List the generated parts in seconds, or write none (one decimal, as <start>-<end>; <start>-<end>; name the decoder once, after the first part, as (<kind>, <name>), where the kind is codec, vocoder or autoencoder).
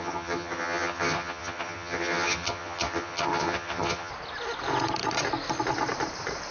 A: 0.0-4.1 (vocoder, HiFi-GAN)